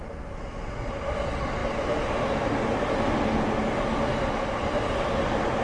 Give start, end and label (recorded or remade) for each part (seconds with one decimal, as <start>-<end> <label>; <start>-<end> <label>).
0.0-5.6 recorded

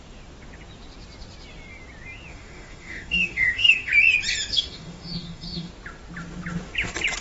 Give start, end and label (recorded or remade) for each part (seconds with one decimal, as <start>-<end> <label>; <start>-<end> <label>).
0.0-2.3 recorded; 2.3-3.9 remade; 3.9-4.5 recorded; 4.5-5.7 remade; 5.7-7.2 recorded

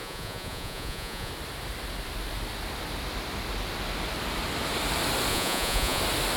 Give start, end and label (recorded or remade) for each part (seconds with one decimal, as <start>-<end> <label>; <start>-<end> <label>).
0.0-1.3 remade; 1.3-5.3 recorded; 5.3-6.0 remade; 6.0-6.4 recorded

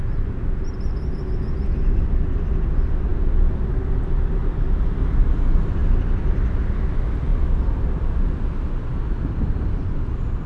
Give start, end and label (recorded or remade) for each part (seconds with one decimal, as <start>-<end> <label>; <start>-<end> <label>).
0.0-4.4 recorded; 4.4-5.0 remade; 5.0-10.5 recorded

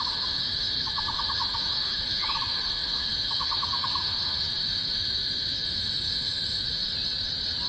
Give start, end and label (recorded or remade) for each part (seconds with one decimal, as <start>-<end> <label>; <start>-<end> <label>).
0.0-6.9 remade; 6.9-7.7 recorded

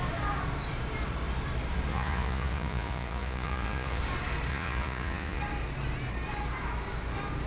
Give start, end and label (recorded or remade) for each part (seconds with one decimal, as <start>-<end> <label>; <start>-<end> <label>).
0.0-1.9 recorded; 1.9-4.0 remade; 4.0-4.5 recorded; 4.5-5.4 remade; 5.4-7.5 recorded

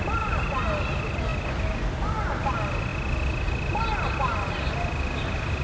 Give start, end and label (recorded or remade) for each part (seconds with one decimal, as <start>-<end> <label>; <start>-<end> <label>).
0.0-5.6 recorded